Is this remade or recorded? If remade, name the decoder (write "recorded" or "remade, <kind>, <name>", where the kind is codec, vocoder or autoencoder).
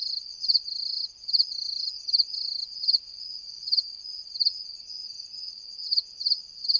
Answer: recorded